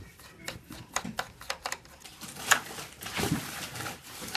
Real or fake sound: real